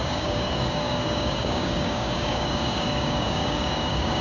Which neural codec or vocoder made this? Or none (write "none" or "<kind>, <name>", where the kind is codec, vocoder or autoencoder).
codec, DAC